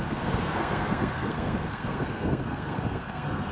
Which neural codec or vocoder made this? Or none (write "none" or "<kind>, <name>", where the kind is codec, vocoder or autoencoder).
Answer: codec, SNAC